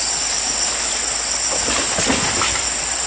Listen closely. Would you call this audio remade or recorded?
recorded